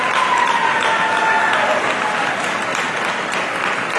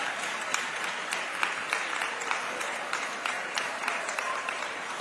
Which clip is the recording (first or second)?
first